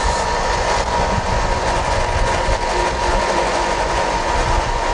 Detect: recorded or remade remade